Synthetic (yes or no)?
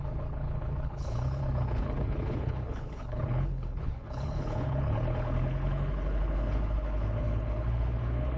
yes